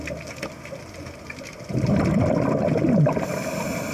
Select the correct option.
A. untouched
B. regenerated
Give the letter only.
A